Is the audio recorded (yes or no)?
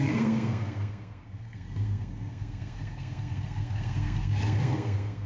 no